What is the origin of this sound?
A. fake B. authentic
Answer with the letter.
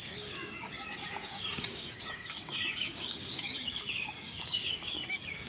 A